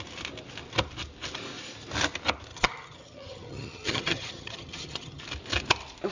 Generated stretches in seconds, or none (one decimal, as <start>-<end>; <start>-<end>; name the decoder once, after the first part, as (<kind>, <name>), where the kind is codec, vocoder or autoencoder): 2.5-5.2 (vocoder, HiFi-GAN)